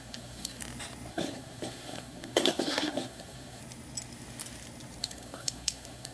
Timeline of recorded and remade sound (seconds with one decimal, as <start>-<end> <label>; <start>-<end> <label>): 0.0-0.6 remade; 0.6-1.1 recorded; 1.1-3.6 remade; 3.6-5.0 recorded; 5.0-6.1 remade

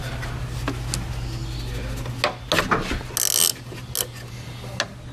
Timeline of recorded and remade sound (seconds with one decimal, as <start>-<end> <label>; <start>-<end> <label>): 0.0-5.1 recorded

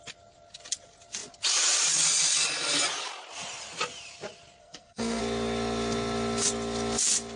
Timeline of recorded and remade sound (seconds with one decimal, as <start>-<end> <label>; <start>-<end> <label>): 0.0-4.6 recorded; 4.6-5.2 remade; 5.2-7.4 recorded

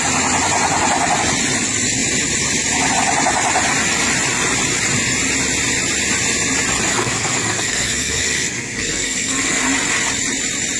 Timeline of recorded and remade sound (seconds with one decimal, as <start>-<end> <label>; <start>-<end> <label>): 0.0-6.9 recorded; 6.9-9.6 remade; 9.6-10.8 recorded

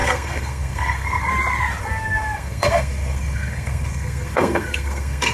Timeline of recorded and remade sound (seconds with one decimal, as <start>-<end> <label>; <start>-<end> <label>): 0.0-1.3 remade; 1.3-1.8 recorded; 1.8-5.3 remade

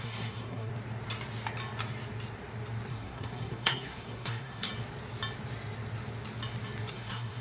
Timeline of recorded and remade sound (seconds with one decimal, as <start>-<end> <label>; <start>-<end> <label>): 0.0-0.7 remade; 0.7-2.9 recorded; 2.9-4.7 remade; 4.7-6.9 recorded; 6.9-7.4 remade